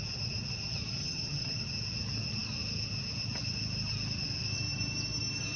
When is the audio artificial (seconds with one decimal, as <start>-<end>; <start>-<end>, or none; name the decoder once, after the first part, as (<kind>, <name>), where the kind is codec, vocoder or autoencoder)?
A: 1.0-1.6 (vocoder, HiFi-GAN)